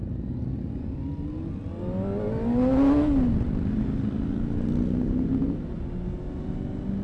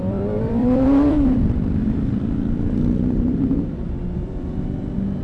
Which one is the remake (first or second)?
second